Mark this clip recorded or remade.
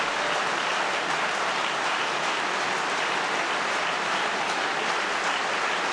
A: recorded